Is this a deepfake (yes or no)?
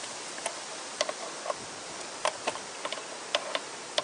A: yes